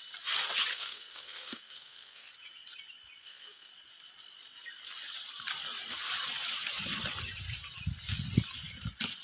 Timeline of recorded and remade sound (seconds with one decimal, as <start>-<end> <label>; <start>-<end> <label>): 0.0-0.7 recorded; 0.7-2.3 remade; 2.3-3.2 recorded; 3.2-3.7 remade; 3.7-9.2 recorded